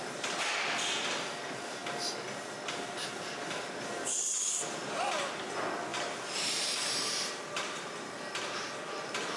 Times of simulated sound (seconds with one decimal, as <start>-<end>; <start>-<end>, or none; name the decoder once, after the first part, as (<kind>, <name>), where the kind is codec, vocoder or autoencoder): 5.9-8.1 (vocoder, BigVGAN v2)